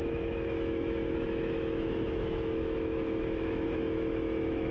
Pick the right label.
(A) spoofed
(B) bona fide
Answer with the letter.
A